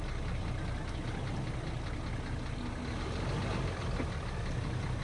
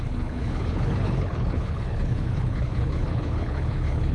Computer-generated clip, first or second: second